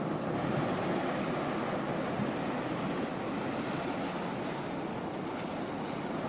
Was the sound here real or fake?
real